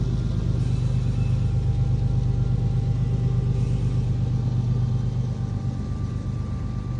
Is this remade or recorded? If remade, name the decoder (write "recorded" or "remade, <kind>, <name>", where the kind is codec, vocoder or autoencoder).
recorded